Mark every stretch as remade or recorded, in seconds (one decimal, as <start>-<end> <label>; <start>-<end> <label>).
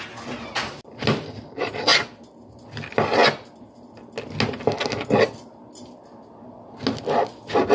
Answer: 0.0-7.7 recorded